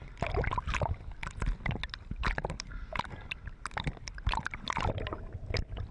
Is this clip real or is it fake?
real